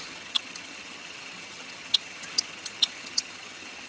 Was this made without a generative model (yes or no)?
no